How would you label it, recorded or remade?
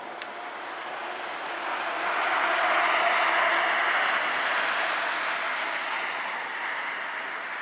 recorded